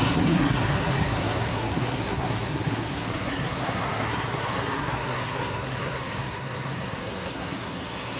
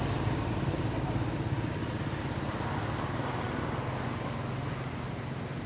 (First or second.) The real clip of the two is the second